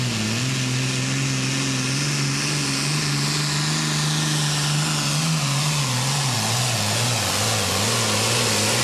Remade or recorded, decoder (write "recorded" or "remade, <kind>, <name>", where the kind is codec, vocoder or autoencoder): recorded